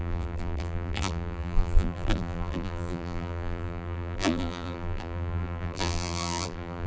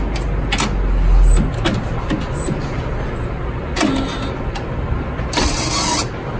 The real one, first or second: second